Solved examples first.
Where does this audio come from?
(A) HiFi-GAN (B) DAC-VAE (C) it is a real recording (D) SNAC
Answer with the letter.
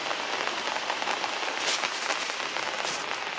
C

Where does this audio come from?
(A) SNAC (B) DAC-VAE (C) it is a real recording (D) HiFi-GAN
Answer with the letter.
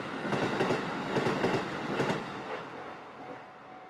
C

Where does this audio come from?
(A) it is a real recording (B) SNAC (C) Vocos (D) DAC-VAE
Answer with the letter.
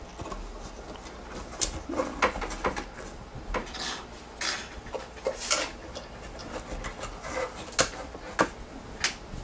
A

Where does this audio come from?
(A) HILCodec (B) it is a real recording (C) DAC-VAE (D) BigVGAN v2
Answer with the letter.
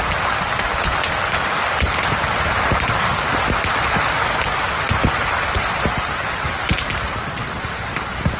B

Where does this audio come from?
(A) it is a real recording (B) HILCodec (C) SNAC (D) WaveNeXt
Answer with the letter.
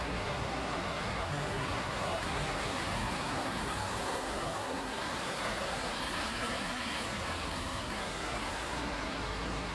C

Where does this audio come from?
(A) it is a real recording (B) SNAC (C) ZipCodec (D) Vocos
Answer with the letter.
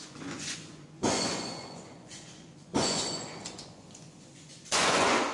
D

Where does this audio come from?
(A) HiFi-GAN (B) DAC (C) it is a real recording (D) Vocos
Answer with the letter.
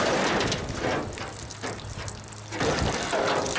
C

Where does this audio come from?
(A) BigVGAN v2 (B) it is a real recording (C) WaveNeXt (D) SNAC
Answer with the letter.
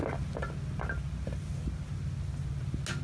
B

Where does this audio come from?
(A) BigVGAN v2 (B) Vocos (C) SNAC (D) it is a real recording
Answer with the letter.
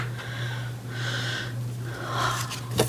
D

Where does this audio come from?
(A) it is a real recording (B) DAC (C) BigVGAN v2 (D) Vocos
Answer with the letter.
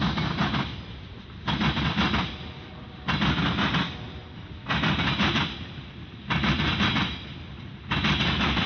A